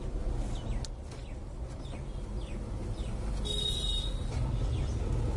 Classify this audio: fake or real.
real